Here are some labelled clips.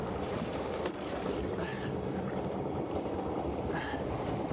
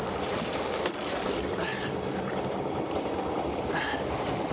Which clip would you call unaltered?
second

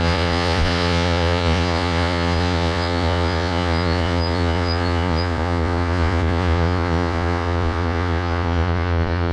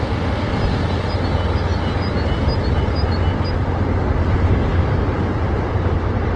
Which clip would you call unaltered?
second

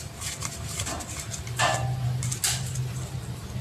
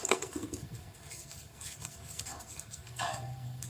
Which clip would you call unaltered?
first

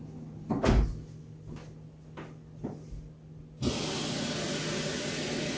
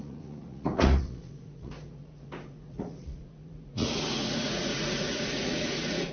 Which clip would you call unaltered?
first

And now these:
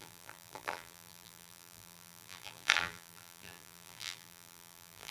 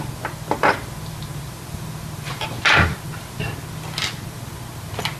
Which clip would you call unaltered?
second